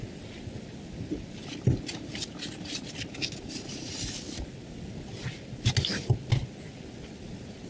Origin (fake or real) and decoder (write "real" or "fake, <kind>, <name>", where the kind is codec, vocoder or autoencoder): real